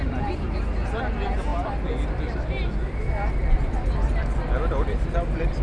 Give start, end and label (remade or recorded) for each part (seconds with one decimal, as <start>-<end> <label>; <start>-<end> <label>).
0.0-5.6 recorded